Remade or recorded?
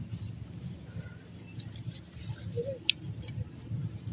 recorded